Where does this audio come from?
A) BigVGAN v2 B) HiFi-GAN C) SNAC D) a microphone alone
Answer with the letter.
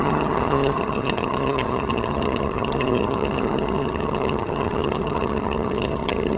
B